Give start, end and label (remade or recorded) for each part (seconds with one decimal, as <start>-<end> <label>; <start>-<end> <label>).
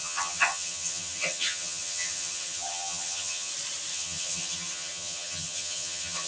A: 0.0-3.5 remade; 3.5-3.9 recorded; 3.9-6.3 remade